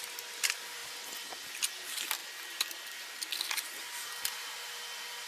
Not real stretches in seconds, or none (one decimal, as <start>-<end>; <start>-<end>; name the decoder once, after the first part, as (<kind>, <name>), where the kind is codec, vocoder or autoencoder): none